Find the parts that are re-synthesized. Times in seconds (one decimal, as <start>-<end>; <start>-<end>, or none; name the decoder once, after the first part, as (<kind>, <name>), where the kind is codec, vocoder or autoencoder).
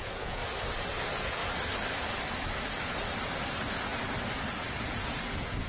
0.0-0.4 (vocoder, Vocos); 0.9-1.4; 4.8-5.7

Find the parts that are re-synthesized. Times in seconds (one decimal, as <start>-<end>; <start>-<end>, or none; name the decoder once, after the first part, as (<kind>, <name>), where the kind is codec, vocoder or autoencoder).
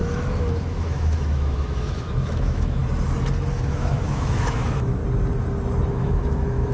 0.0-2.8 (autoencoder, DAC-VAE); 3.5-5.0; 5.9-6.7